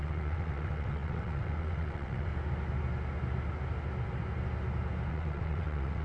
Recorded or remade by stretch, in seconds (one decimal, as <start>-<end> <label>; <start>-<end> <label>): 0.0-2.3 remade; 2.3-5.1 recorded; 5.1-6.0 remade